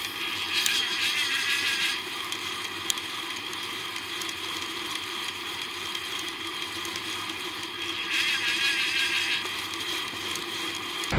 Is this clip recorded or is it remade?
remade